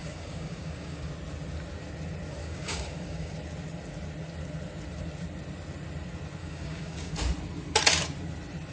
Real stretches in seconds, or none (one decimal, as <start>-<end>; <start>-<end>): 1.1-2.4; 3.3-6.4; 7.1-8.7